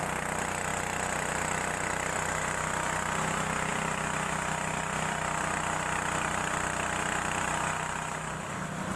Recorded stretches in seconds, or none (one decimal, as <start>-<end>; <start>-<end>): 0.0-9.0